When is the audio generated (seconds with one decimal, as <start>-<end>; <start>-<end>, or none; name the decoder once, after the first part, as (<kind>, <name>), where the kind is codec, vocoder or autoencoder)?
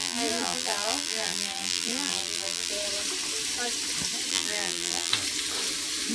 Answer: 0.0-2.7 (vocoder, BigVGAN v2); 4.3-5.1